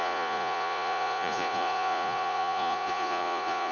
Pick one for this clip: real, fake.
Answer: fake